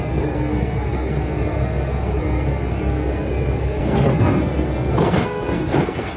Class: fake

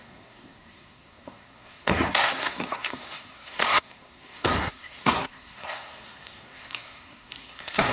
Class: fake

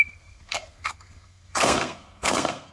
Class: fake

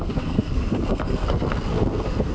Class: fake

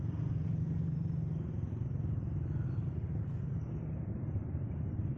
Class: real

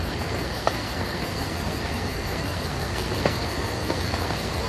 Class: fake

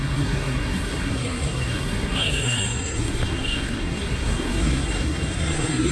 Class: fake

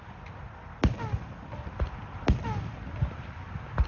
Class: real